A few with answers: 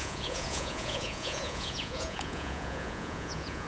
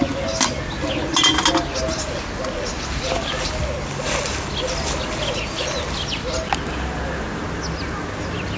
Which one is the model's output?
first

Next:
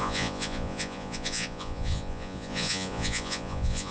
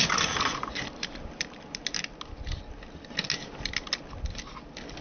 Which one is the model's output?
first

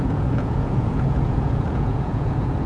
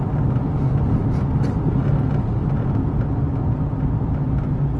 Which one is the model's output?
first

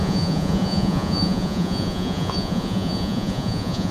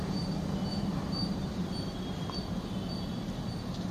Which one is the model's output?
first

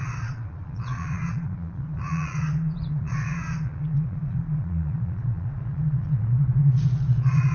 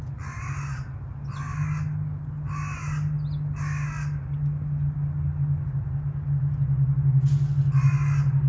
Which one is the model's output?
first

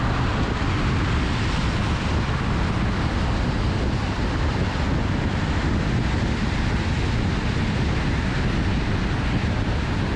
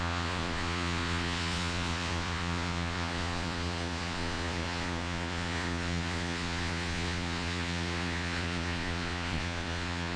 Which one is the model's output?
second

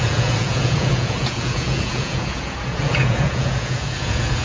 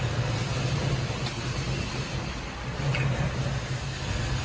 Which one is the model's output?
first